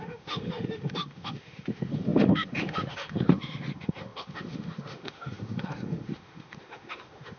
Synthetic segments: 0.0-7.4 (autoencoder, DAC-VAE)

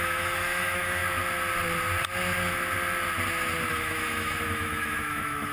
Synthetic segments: 0.0-1.0 (autoencoder, DAC-VAE); 3.7-5.5

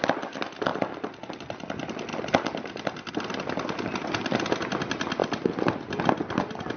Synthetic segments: none

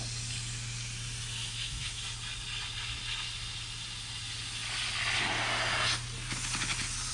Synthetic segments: 1.4-2.0 (autoencoder, DAC-VAE)